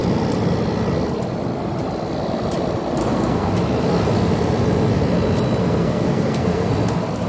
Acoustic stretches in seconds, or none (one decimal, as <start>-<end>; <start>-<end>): 0.0-3.0; 3.5-5.6; 6.7-7.3

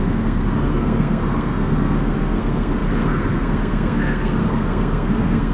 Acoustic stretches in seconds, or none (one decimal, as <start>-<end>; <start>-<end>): none